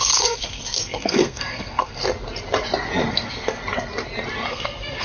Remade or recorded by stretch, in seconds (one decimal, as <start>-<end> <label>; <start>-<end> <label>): 0.0-2.0 remade; 2.0-3.1 recorded; 3.1-3.6 remade; 3.6-4.5 recorded; 4.5-5.0 remade